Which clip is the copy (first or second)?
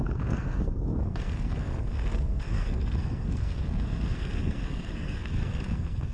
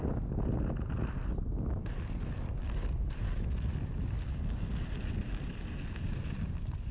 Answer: first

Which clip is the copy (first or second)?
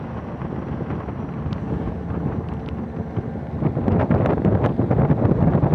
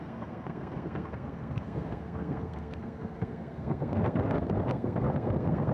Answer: second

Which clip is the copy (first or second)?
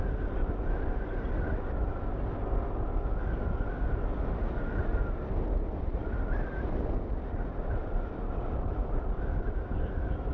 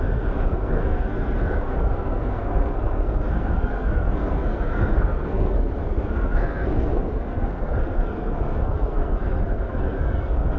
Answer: second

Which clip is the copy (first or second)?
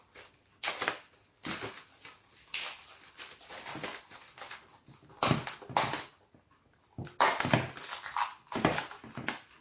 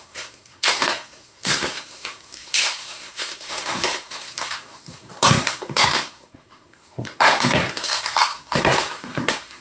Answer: second